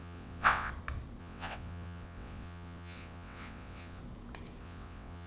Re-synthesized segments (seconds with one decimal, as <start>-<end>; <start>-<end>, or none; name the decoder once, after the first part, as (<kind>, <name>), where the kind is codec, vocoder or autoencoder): 0.0-0.7 (vocoder, WaveNeXt); 1.2-4.0; 4.6-5.3